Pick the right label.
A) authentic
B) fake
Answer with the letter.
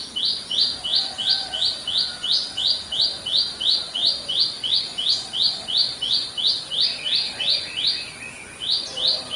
B